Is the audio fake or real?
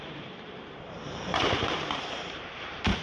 fake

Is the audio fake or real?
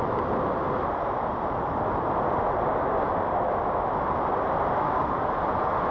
real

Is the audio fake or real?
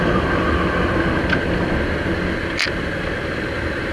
real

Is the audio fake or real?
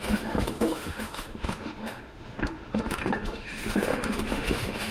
fake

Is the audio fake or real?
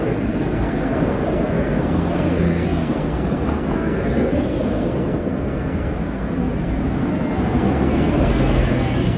fake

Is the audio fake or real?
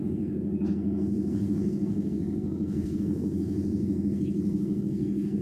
fake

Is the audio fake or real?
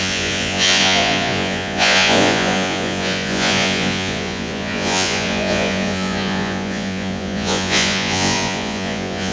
fake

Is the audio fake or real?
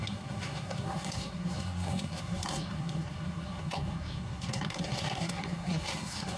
fake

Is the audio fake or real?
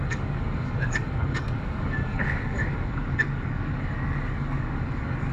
fake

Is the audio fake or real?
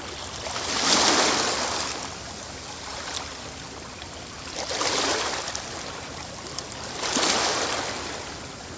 real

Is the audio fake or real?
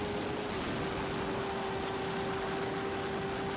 real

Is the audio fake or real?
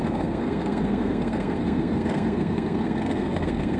fake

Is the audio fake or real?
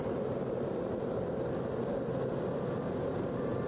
fake